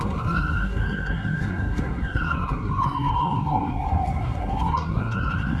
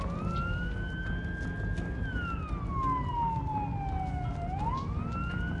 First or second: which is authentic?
second